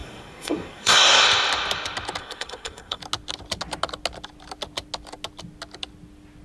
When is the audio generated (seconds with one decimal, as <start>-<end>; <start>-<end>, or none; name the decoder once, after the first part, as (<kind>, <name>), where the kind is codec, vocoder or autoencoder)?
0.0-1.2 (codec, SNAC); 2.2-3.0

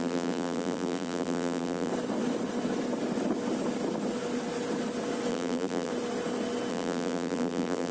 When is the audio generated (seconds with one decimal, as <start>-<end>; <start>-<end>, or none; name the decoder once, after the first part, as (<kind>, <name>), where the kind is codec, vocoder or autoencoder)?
0.0-1.9 (vocoder, BigVGAN v2); 5.3-5.9; 6.7-7.9

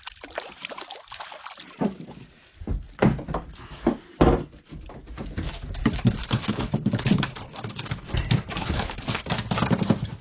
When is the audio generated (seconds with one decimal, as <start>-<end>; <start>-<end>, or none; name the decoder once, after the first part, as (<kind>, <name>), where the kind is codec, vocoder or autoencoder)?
5.8-8.0 (codec, HILCodec); 8.6-9.2

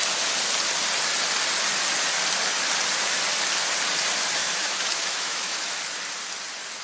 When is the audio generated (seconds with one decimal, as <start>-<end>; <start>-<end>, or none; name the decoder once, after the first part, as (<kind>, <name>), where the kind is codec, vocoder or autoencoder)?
4.4-5.8 (autoencoder, DAC-VAE)

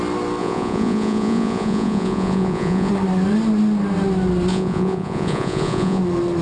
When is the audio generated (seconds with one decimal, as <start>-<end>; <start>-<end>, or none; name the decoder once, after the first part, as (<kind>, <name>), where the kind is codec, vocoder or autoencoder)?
0.4-2.9 (vocoder, Vocos); 4.5-6.0